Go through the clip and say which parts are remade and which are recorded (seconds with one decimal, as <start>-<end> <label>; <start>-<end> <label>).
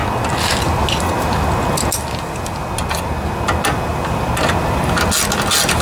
0.0-3.9 recorded; 3.9-5.0 remade; 5.0-5.8 recorded